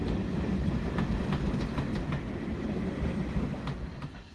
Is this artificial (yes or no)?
no